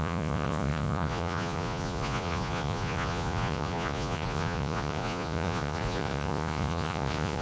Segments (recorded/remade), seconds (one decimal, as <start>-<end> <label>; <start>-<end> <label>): 0.0-7.4 remade